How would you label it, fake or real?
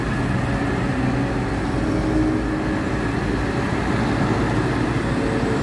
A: real